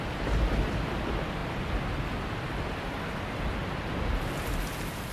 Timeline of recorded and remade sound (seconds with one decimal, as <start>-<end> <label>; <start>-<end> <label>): 0.0-5.1 recorded